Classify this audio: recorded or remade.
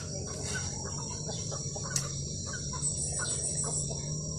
remade